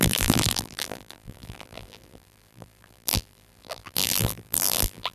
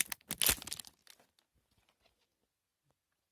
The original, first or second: second